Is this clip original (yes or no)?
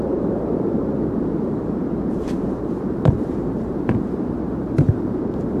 no